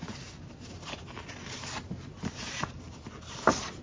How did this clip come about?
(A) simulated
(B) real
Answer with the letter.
B